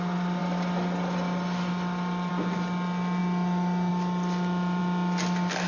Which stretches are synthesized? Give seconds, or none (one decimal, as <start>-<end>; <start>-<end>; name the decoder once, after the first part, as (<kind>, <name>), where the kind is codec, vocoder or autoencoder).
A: none